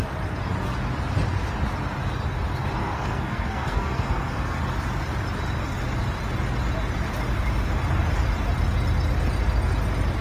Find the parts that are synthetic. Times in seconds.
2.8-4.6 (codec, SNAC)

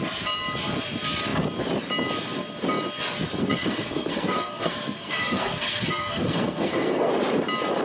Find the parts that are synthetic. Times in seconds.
3.4-7.1 (codec, SNAC)

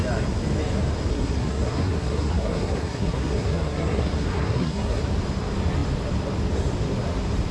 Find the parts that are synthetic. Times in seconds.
1.1-5.0 (codec, SNAC)

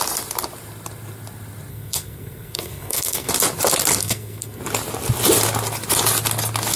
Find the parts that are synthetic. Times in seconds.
1.7-3.3 (codec, SNAC); 4.0-4.6

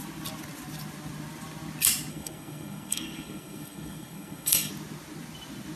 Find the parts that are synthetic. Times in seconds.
2.1-4.7 (codec, SNAC)

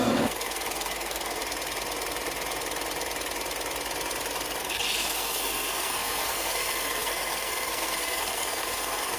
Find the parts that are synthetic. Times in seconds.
0.0-1.4 (codec, SNAC); 4.6-9.2

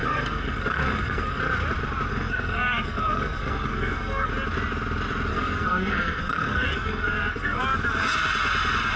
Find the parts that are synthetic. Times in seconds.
0.0-1.4 (codec, SNAC); 2.1-4.3; 5.3-7.6